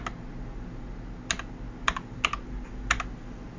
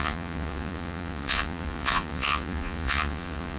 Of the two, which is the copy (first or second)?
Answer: second